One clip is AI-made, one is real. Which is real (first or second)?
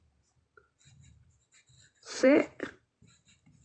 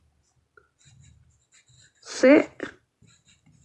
second